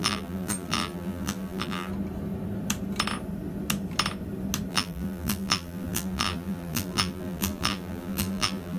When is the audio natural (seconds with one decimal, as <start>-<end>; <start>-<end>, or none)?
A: 1.9-4.7